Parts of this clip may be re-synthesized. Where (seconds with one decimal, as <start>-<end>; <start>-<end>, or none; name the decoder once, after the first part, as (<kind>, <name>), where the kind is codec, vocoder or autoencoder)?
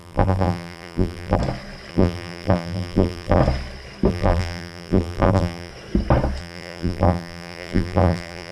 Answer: 0.0-1.4 (vocoder, BigVGAN v2); 1.9-3.4; 4.1-5.7; 6.4-8.5